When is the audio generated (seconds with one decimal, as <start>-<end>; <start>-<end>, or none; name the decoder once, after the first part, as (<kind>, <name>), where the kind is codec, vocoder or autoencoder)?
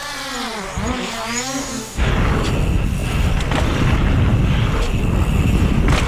1.6-2.1 (codec, DAC)